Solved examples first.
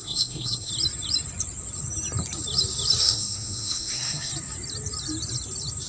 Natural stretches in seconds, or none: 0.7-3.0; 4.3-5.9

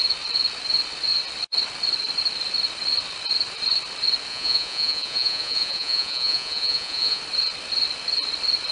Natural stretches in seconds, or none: 0.0-4.3; 7.2-8.7

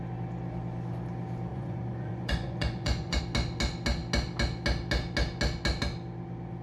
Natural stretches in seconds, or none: 0.0-1.5; 3.2-6.6

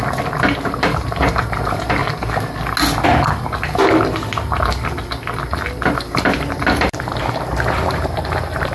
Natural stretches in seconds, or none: 0.0-0.6; 2.0-5.9

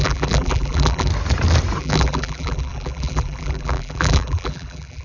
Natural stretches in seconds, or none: 1.1-1.8